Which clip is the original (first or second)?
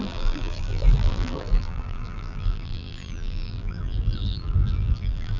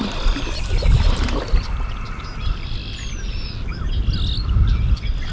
second